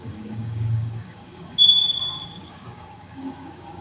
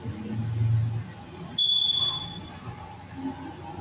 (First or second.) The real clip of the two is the second